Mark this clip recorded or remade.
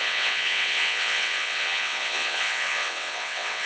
remade